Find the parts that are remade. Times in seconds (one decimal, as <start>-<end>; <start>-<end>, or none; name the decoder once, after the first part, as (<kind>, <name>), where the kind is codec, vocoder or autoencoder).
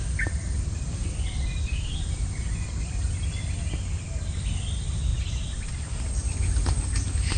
none